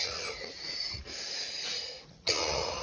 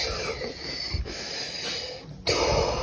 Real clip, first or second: second